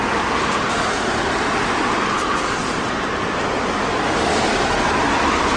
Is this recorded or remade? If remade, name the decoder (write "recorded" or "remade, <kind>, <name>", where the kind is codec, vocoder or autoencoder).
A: remade, vocoder, BigVGAN v2